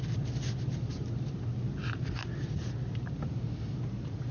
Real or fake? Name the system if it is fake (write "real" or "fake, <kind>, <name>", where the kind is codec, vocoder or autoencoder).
real